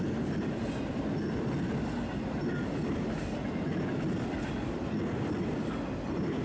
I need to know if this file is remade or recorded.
recorded